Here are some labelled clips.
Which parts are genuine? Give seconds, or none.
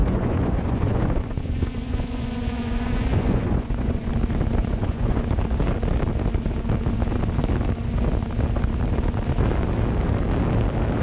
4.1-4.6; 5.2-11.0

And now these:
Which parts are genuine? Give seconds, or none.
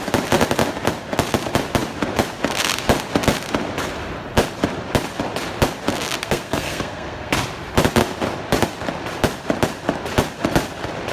0.0-6.2; 7.3-11.1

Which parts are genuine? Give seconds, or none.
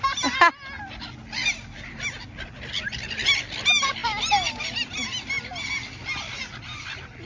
0.0-7.3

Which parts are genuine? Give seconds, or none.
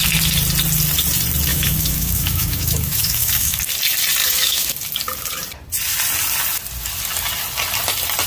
0.0-1.5; 3.6-4.2; 4.7-8.3